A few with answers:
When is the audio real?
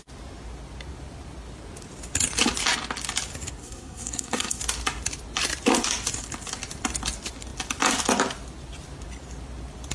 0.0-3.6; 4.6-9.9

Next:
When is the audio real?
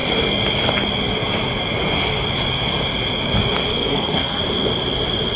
0.0-3.7; 4.4-5.4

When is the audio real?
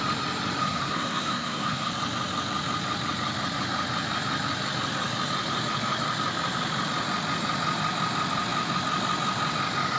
0.0-0.6; 1.9-10.0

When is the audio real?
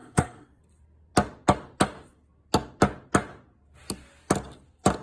0.6-5.0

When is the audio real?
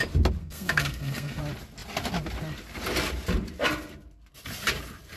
0.0-0.4; 1.4-5.2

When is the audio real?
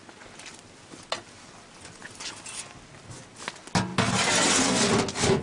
0.0-5.4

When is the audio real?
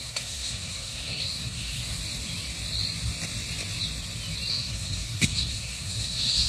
2.0-4.5